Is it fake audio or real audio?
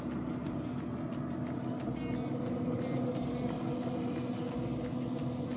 real